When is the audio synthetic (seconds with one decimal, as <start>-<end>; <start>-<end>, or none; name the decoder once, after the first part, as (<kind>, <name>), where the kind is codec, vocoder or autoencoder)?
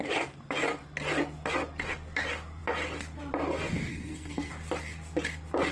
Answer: 3.9-4.5 (codec, SNAC)